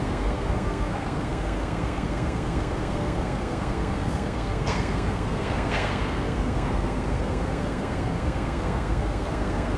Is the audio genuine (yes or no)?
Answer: no